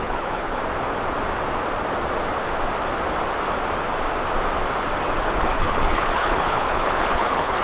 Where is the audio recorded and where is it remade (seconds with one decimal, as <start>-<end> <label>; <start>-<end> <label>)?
0.0-0.6 remade; 0.6-5.2 recorded; 5.2-7.6 remade